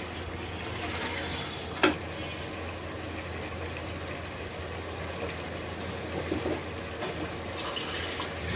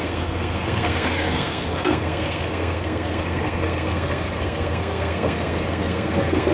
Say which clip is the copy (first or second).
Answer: second